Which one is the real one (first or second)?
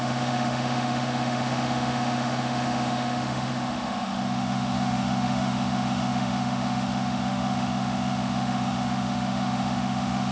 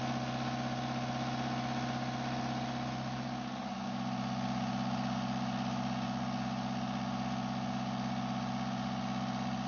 second